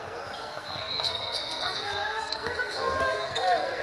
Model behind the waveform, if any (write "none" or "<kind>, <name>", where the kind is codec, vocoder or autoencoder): codec, SNAC